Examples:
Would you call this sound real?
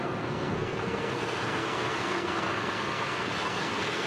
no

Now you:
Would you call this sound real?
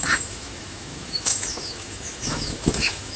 no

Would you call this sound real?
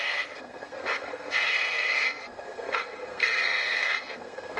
no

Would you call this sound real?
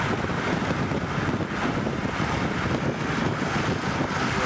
yes